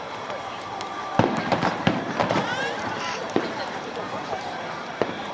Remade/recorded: remade